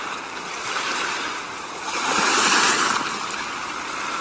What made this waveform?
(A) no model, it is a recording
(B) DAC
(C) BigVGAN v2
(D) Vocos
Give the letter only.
A